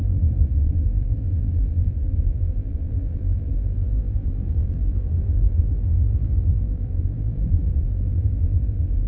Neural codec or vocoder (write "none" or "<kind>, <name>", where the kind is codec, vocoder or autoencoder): vocoder, BigVGAN v2